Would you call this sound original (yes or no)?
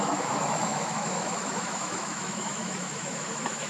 no